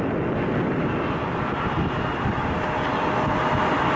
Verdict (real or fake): fake